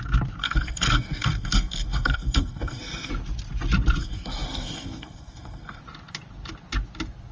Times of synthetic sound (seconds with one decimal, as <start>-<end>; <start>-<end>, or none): 0.4-3.1; 4.0-5.8